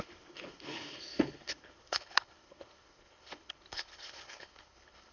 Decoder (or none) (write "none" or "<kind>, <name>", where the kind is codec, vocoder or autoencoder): codec, HILCodec